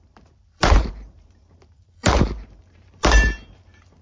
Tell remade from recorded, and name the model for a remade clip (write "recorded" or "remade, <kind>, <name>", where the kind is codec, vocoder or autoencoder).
remade, vocoder, BigVGAN v2